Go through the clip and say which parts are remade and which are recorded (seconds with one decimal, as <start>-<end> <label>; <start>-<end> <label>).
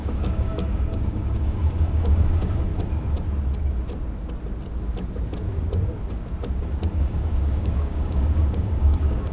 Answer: 0.0-2.7 remade; 2.7-6.9 recorded; 6.9-9.3 remade